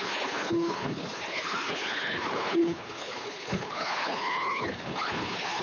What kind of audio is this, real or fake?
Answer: fake